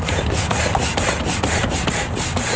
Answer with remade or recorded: recorded